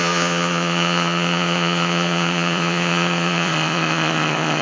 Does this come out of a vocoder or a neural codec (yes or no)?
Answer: yes